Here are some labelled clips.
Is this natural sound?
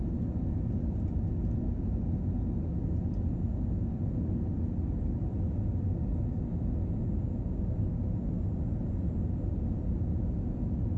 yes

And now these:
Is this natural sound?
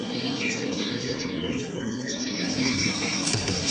no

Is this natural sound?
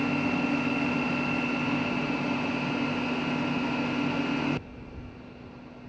yes